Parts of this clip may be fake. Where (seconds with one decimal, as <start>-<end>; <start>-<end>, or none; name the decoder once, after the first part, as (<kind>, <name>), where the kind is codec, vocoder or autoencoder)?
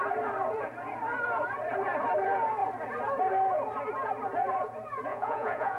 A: 5.1-5.8 (vocoder, Vocos)